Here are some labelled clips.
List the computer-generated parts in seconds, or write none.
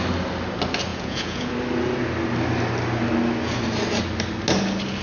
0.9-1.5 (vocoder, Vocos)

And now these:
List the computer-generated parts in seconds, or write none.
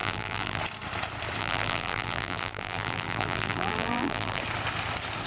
0.0-0.6 (vocoder, BigVGAN v2); 1.4-4.4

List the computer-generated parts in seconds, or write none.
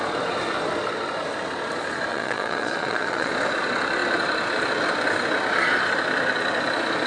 2.1-3.3 (vocoder, Vocos)